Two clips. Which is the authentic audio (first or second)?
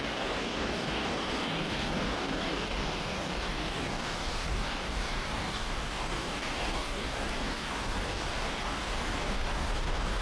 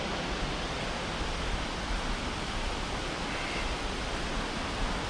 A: second